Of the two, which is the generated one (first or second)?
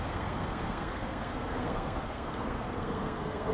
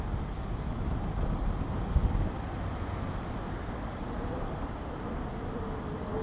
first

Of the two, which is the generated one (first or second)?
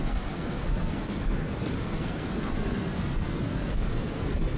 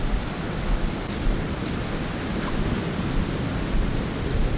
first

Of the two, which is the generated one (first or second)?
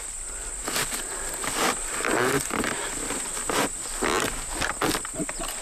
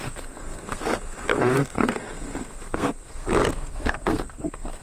second